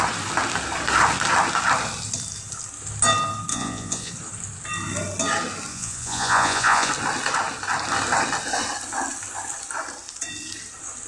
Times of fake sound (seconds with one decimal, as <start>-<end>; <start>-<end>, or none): 3.5-4.1; 5.7-6.9

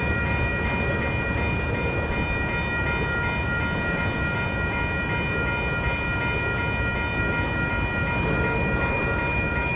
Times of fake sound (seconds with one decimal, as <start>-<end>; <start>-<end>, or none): none

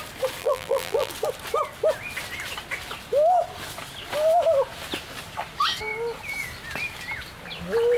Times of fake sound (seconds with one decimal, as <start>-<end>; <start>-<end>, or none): 0.4-1.1

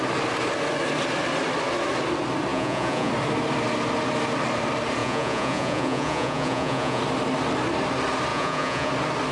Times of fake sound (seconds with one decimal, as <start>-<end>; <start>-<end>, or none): 2.5-3.1; 5.0-7.0; 8.3-8.9

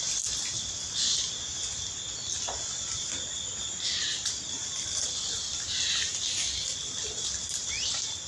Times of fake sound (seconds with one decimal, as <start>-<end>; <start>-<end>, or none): none

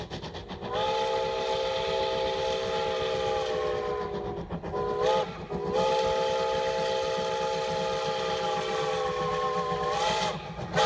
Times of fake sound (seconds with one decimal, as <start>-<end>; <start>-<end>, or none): none

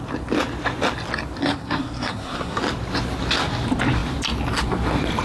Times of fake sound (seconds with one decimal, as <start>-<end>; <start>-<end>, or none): 1.4-2.6

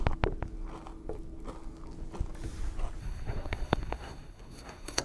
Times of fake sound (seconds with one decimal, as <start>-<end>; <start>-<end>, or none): 3.0-5.0